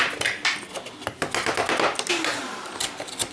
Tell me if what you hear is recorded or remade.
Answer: recorded